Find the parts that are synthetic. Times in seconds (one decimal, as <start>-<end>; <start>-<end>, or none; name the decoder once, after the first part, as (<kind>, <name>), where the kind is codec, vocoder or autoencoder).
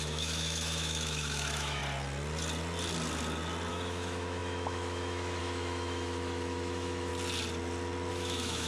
0.0-1.8 (autoencoder, DAC-VAE); 3.7-7.1; 8.1-8.7